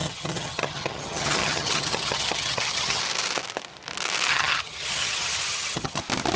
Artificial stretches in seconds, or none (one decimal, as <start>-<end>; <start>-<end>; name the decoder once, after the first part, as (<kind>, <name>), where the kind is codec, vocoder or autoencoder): 0.0-3.0 (vocoder, HiFi-GAN); 4.3-6.0